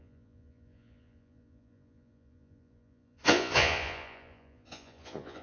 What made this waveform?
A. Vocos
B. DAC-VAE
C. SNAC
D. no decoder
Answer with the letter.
A